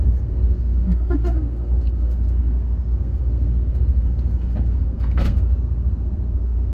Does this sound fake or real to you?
fake